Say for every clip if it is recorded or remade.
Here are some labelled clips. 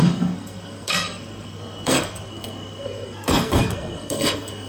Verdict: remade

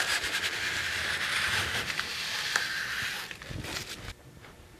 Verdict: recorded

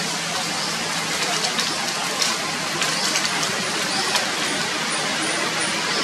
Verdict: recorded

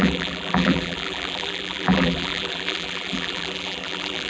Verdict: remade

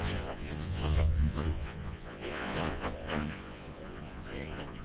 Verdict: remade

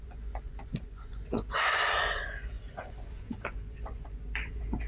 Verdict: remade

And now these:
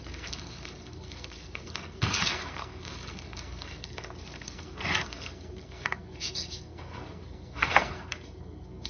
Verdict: remade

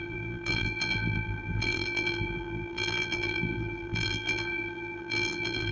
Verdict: remade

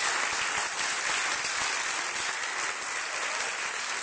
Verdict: recorded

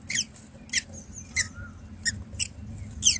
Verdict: recorded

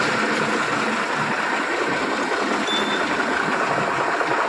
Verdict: recorded